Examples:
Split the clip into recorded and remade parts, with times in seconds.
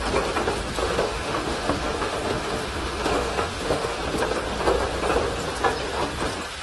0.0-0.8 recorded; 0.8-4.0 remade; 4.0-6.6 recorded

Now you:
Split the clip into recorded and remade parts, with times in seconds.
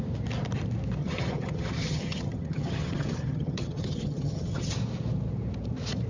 0.0-1.0 recorded; 1.0-4.7 remade; 4.7-6.1 recorded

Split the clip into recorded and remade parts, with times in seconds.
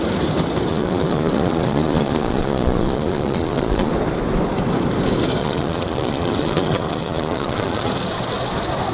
0.0-0.7 recorded; 0.7-3.9 remade; 3.9-5.4 recorded; 5.4-7.9 remade; 7.9-8.9 recorded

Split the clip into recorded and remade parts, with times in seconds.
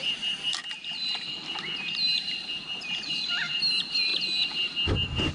0.0-0.9 remade; 0.9-1.6 recorded; 1.6-4.1 remade; 4.1-5.3 recorded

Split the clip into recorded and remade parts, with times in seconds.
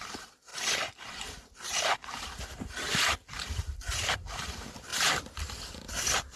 0.0-0.5 remade; 0.5-1.2 recorded; 1.2-6.4 remade